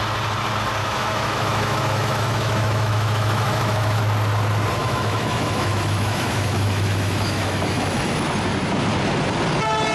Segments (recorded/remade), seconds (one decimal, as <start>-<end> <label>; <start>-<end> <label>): 0.0-0.8 recorded; 0.8-4.0 remade; 4.0-4.8 recorded; 4.8-8.1 remade; 8.1-9.9 recorded